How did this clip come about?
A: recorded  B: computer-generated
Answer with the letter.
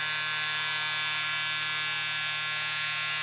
A